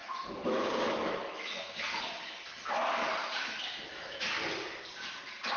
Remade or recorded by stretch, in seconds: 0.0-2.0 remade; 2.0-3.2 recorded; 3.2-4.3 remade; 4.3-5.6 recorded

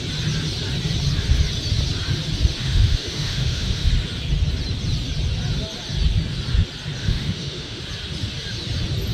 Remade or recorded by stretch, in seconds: 0.0-2.6 recorded; 2.6-3.9 remade; 3.9-7.0 recorded; 7.0-7.8 remade; 7.8-9.1 recorded